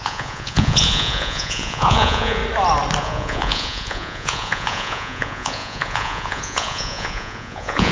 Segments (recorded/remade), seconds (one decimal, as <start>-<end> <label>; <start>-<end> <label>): 0.0-2.4 remade; 2.4-3.0 recorded; 3.0-7.9 remade